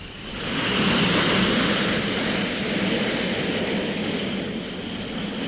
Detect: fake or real real